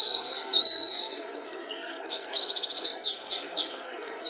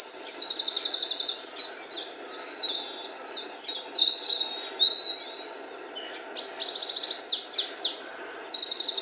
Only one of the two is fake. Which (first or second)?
first